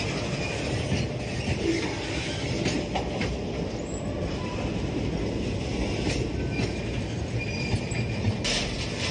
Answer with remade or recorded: recorded